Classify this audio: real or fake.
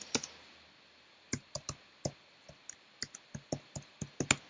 real